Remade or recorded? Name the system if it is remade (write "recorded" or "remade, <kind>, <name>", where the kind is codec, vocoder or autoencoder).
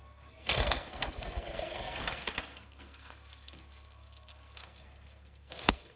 remade, codec, SNAC